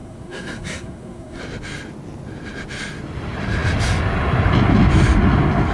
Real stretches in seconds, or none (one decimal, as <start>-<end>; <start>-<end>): 1.4-5.7